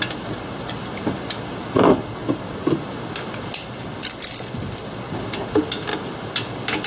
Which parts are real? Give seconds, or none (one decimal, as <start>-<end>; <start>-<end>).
0.0-6.9

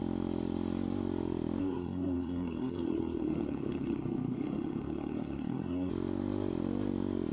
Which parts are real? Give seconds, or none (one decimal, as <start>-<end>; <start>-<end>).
0.0-1.6; 5.9-7.3